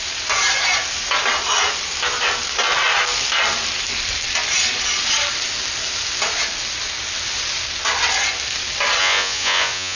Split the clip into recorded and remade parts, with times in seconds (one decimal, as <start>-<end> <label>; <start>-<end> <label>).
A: 0.0-9.0 recorded; 9.0-10.0 remade